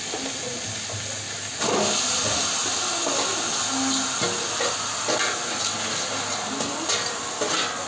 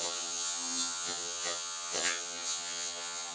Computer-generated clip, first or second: second